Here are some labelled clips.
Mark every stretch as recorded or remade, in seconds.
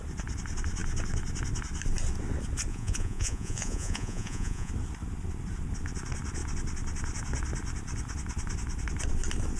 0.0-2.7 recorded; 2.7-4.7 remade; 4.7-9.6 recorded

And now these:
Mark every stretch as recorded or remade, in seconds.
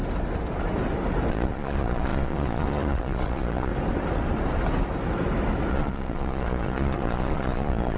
0.0-1.3 recorded; 1.3-3.7 remade; 3.7-5.7 recorded; 5.7-8.0 remade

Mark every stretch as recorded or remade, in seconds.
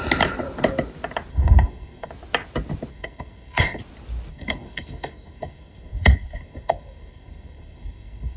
0.0-1.3 recorded; 1.3-2.1 remade; 2.1-2.9 recorded; 2.9-3.8 remade; 3.8-4.3 recorded; 4.3-8.4 remade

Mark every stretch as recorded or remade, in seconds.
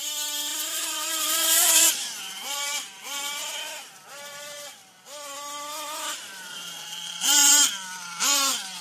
0.0-3.3 remade; 3.3-4.1 recorded; 4.1-4.8 remade; 4.8-6.1 recorded; 6.1-7.5 remade; 7.5-8.2 recorded; 8.2-8.8 remade